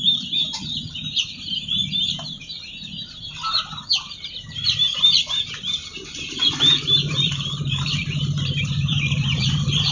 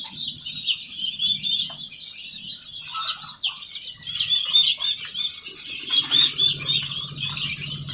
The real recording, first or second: second